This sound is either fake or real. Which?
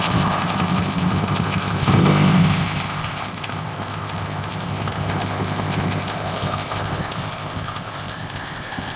fake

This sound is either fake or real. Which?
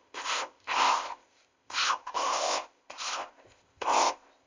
fake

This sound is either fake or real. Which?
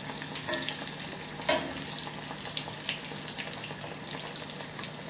real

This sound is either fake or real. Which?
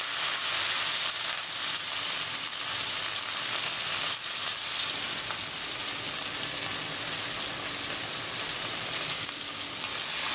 real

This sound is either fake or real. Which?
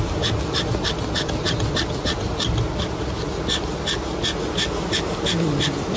real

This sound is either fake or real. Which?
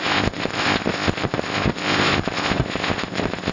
fake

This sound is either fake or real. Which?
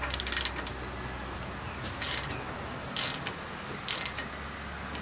real